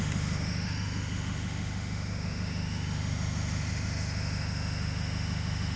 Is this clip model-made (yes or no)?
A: yes